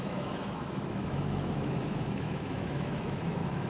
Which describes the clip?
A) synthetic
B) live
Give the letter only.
A